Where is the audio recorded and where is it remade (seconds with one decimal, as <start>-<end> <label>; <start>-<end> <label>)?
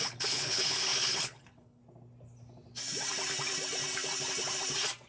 0.0-1.8 remade; 1.8-5.1 recorded